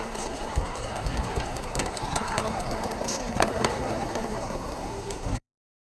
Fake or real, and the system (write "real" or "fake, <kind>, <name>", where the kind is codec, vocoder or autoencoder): fake, codec, SNAC